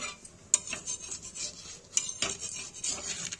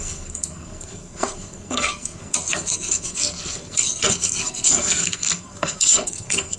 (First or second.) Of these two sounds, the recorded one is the first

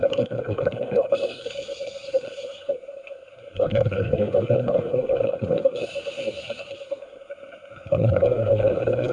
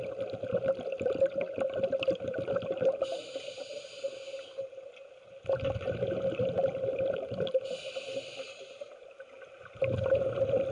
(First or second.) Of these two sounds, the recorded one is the second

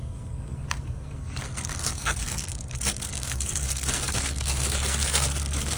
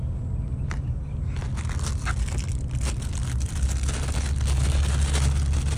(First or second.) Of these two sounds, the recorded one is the second